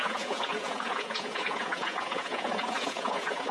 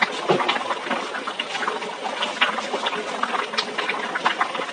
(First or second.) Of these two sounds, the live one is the second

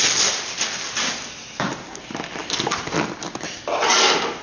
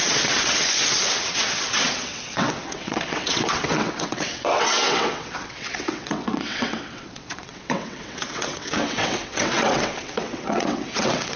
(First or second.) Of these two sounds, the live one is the first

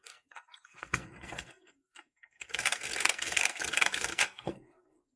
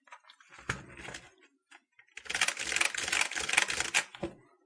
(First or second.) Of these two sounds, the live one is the second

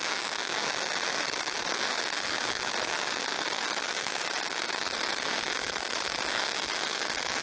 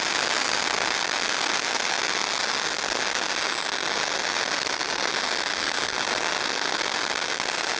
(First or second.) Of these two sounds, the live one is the second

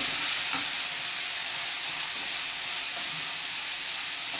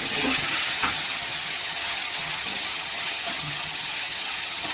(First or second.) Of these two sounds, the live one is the first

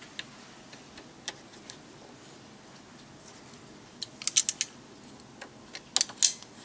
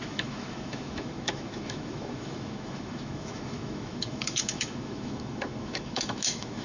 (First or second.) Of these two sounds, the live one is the first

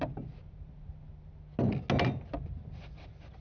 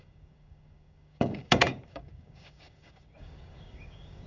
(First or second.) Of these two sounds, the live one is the first